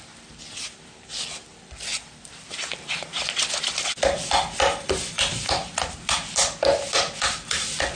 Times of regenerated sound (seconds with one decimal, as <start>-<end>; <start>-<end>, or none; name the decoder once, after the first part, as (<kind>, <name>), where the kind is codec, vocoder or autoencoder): 1.9-6.3 (vocoder, BigVGAN v2)